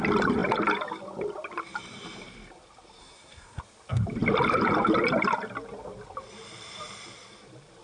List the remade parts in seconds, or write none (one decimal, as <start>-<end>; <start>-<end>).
3.0-3.6